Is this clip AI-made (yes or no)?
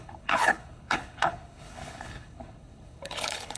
yes